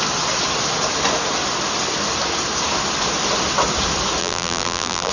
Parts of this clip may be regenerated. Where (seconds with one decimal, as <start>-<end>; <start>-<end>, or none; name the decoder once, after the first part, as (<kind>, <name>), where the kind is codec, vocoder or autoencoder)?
4.2-5.1 (vocoder, BigVGAN v2)